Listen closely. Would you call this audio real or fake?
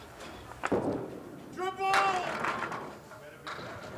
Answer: real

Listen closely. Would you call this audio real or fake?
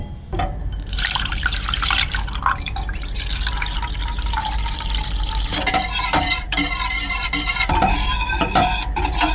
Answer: fake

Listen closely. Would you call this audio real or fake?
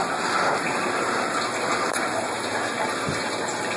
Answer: real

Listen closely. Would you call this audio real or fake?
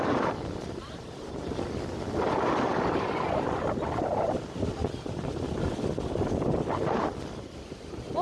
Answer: fake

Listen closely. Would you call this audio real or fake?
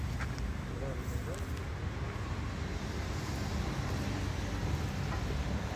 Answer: real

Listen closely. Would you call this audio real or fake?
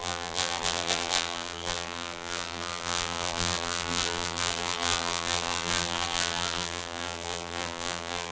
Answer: fake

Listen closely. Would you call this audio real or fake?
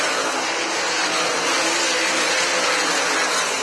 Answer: real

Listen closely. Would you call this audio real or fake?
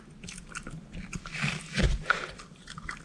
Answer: real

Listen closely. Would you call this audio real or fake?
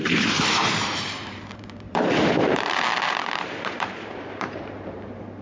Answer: fake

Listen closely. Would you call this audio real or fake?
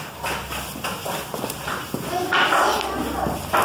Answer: real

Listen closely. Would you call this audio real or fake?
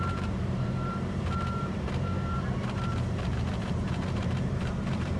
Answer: fake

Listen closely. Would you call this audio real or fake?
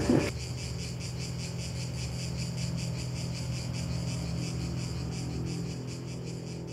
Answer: real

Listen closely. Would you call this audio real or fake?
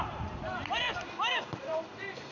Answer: fake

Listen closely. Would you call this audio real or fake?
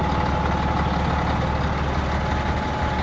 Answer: real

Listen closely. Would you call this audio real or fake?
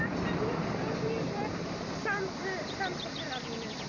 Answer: fake